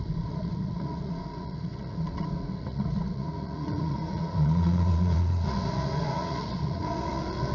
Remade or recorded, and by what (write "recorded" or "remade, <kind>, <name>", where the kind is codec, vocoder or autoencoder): remade, vocoder, Vocos